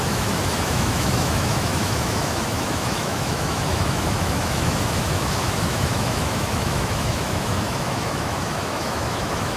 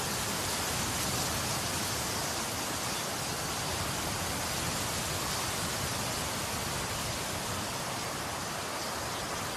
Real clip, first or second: second